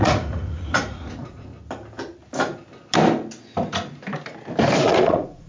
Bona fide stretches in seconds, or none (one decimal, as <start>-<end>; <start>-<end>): 1.5-4.8